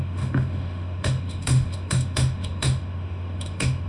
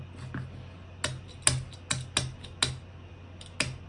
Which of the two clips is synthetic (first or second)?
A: first